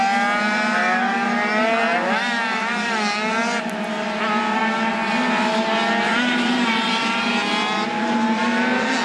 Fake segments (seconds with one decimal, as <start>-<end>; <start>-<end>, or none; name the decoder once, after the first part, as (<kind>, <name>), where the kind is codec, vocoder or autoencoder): 6.1-7.3 (vocoder, BigVGAN v2)